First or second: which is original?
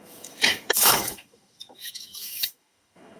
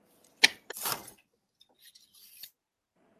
second